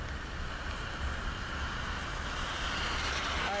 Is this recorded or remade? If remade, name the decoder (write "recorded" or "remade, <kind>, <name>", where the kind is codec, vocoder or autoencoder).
recorded